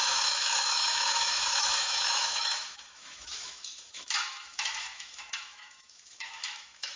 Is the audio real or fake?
fake